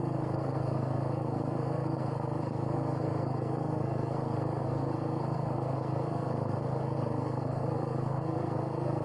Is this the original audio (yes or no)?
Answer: no